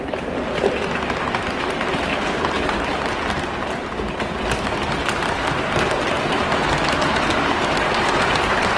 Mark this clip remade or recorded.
recorded